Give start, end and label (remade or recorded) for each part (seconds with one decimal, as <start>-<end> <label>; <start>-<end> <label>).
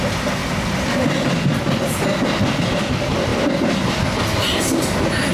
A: 0.0-5.3 recorded